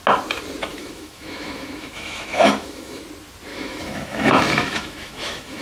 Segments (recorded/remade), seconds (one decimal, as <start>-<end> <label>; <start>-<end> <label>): 0.0-0.7 recorded; 0.7-3.0 remade; 3.0-3.5 recorded; 3.5-5.6 remade